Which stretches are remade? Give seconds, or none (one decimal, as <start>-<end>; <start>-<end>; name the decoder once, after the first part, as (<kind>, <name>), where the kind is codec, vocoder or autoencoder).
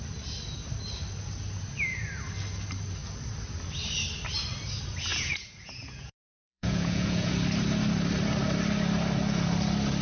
5.1-7.3 (vocoder, Vocos)